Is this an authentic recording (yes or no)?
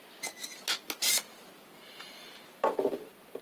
yes